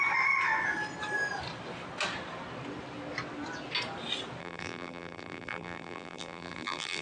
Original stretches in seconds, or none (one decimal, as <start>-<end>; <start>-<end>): 0.0-4.4